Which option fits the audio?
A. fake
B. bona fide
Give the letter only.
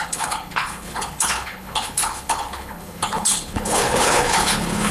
A